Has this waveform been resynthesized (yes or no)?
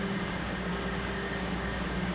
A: yes